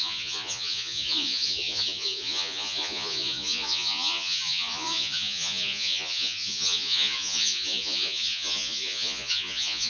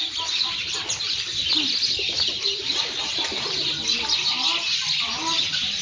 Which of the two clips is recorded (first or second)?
second